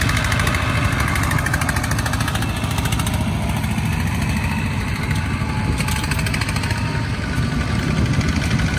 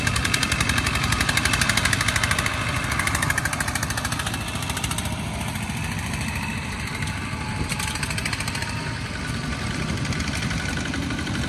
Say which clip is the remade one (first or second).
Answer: second